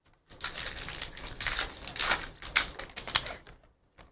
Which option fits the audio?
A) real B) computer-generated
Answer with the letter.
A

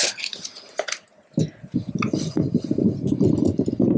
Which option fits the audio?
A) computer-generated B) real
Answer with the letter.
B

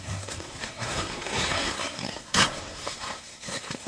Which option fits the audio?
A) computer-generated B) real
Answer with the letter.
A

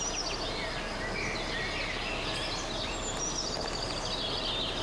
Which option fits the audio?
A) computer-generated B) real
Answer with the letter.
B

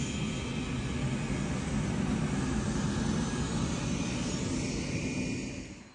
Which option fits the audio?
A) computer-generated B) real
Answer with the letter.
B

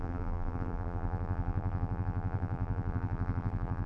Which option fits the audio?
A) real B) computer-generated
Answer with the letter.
B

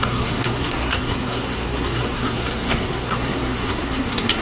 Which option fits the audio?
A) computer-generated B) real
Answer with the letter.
A